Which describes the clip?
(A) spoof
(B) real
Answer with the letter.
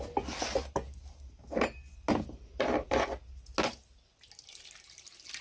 B